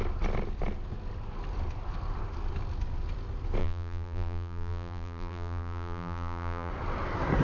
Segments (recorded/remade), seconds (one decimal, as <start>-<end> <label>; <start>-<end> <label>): 0.0-3.6 recorded; 3.6-6.7 remade; 6.7-7.4 recorded